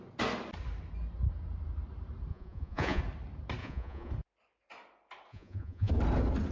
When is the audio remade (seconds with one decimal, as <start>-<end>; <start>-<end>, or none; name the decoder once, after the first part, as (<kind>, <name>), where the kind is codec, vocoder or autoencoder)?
2.3-3.0 (vocoder, Vocos); 3.6-4.1; 5.3-5.9